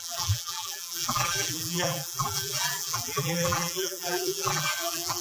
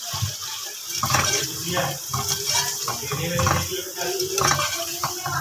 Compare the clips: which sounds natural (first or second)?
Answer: second